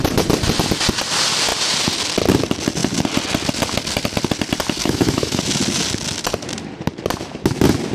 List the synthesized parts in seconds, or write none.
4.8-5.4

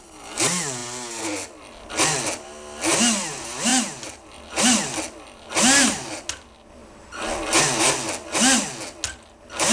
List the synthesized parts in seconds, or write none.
none

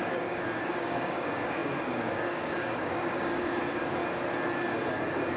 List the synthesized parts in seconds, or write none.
0.0-4.0; 4.9-5.4

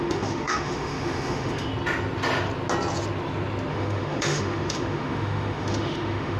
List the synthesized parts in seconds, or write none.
0.0-1.7; 3.7-6.4

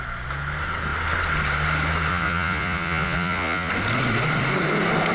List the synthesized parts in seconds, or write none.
2.1-3.7

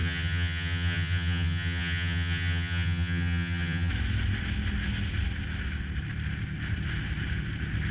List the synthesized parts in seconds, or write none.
0.0-3.9